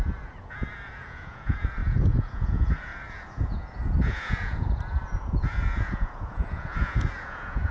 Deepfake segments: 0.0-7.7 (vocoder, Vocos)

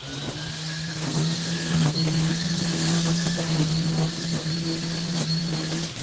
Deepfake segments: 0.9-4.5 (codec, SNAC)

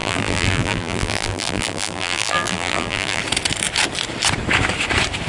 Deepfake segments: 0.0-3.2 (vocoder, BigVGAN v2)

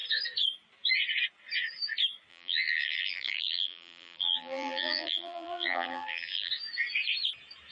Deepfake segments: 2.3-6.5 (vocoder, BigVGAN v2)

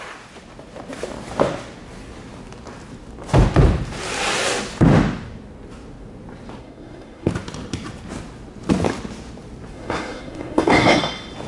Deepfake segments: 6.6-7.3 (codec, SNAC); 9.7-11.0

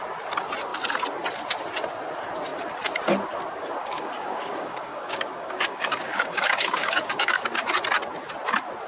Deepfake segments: 3.8-7.6 (codec, DAC)